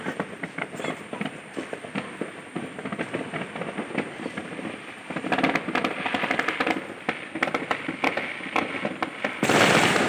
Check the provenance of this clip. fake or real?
real